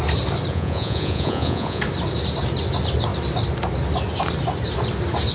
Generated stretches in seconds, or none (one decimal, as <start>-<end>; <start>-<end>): 0.5-1.8